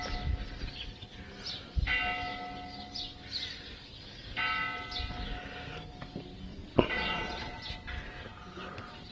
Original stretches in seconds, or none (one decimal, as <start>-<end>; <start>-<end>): 0.0-6.5; 7.7-9.1